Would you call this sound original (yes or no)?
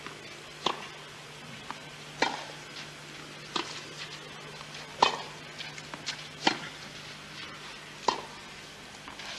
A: yes